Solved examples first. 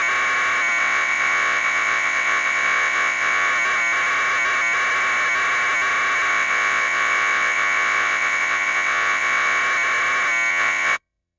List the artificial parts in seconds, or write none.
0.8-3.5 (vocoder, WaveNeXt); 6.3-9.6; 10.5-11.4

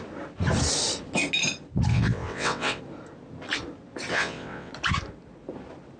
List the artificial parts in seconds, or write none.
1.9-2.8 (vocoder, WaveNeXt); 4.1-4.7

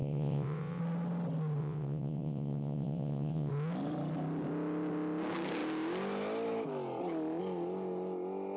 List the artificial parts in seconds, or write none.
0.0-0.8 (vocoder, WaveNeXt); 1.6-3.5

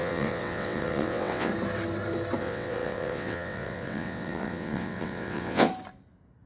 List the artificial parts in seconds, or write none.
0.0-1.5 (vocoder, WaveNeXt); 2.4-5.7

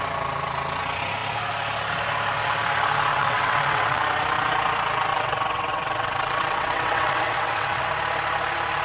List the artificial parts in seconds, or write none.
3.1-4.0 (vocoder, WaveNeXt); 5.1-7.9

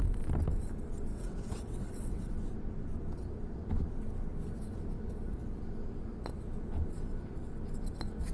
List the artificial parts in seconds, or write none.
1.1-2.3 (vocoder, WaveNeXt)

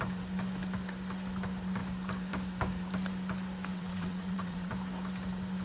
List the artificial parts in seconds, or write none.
3.7-4.7 (vocoder, WaveNeXt)

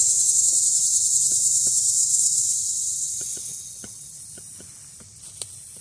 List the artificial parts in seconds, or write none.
2.0-4.2 (vocoder, WaveNeXt)